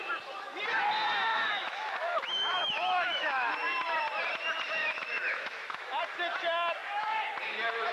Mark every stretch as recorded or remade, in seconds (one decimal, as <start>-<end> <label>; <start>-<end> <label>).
0.0-1.3 recorded; 1.3-3.5 remade; 3.5-4.8 recorded; 4.8-6.0 remade; 6.0-7.9 recorded